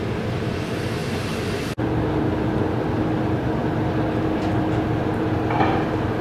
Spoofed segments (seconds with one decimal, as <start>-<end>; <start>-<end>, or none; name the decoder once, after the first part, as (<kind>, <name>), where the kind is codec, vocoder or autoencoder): 1.0-2.1 (vocoder, BigVGAN v2)